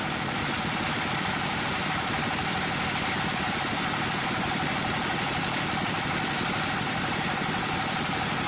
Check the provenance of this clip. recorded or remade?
remade